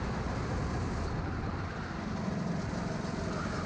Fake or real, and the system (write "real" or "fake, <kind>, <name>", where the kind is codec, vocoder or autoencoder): real